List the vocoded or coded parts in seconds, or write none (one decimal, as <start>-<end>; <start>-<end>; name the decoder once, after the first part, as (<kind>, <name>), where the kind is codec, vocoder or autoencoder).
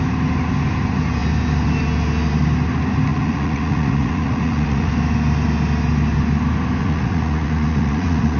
3.1-4.9 (vocoder, Vocos); 6.8-8.4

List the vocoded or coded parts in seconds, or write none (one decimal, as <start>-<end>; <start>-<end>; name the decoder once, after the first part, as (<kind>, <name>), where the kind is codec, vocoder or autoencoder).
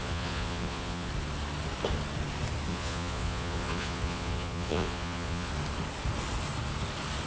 0.0-1.1 (vocoder, Vocos); 2.7-5.5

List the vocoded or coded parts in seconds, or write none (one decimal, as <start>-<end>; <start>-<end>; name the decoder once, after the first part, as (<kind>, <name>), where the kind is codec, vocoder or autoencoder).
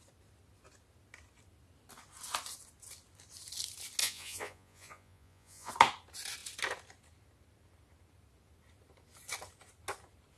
4.0-5.7 (vocoder, Vocos)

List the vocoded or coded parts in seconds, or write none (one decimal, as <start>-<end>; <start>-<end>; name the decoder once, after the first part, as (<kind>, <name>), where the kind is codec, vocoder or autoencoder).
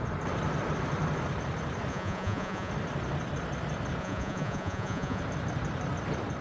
1.9-2.7 (vocoder, Vocos); 4.0-5.2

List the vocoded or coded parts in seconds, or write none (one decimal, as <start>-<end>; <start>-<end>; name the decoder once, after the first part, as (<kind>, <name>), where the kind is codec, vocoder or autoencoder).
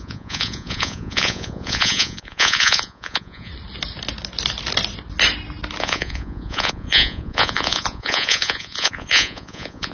0.0-3.5 (vocoder, Vocos); 5.8-9.9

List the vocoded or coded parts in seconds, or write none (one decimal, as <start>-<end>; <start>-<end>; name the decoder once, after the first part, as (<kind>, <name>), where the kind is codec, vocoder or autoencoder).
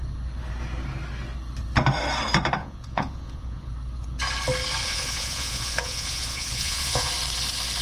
2.6-3.7 (vocoder, Vocos); 4.8-7.1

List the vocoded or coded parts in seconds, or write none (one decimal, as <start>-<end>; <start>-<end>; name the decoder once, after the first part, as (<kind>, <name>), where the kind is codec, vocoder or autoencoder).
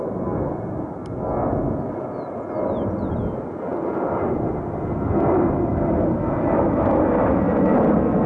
none